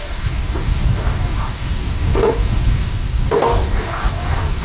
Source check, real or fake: fake